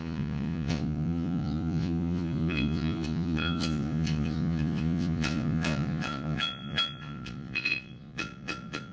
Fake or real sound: fake